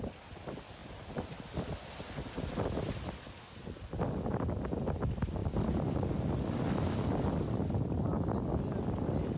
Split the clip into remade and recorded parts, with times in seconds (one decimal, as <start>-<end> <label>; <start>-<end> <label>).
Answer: 0.0-0.8 recorded; 0.8-1.7 remade; 1.7-9.4 recorded